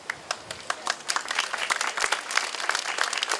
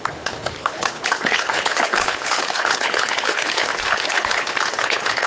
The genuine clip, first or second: first